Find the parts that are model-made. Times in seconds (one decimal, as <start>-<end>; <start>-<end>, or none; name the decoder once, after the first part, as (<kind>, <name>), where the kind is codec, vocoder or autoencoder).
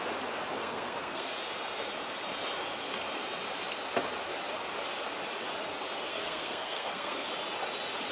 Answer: 0.5-1.3 (codec, SNAC); 6.1-7.3